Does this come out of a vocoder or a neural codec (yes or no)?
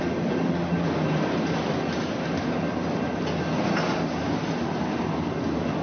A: no